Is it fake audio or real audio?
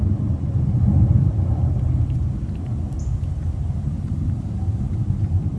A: fake